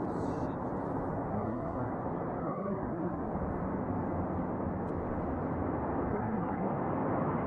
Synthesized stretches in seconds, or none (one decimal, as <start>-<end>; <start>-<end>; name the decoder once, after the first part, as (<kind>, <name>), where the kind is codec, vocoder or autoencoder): 1.3-1.9 (codec, SNAC); 2.4-3.3; 6.1-6.7